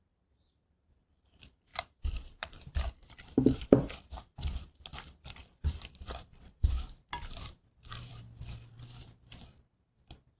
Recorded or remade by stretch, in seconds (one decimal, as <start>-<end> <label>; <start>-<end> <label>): 0.0-8.1 remade; 8.1-8.7 recorded; 8.7-10.4 remade